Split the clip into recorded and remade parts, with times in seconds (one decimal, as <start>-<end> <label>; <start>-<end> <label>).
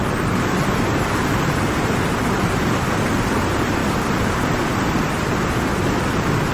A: 0.0-6.5 recorded